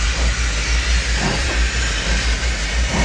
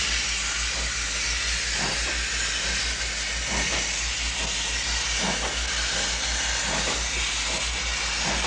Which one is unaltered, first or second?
second